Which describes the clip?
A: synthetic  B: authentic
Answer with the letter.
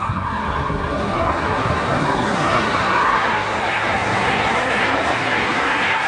A